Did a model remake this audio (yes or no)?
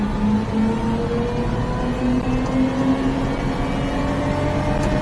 no